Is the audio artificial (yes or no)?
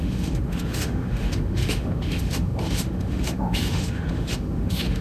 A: yes